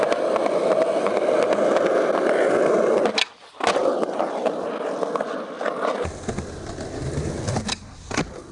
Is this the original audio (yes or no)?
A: yes